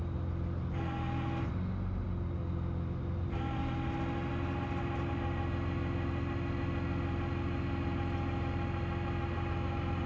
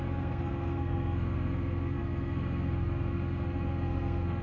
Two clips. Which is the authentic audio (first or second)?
first